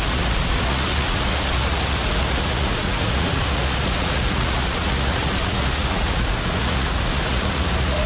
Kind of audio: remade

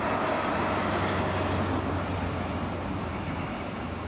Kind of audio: recorded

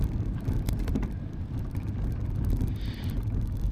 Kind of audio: recorded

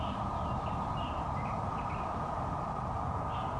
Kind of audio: recorded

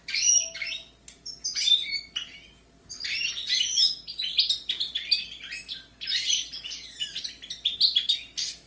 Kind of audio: recorded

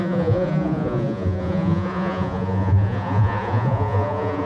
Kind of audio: remade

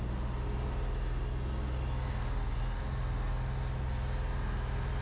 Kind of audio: recorded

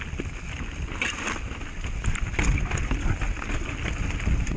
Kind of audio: recorded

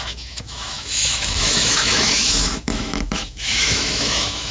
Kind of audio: remade